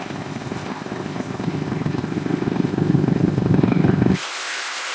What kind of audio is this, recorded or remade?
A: remade